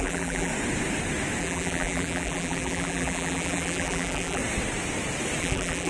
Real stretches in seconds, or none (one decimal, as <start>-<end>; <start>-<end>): 0.5-1.4; 4.4-5.4